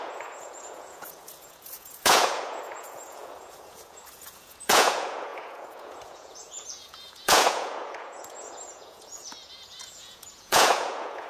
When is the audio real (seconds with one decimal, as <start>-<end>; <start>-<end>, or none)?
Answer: none